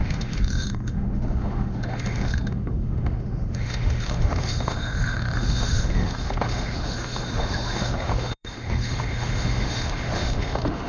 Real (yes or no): no